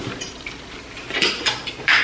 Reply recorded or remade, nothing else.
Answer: remade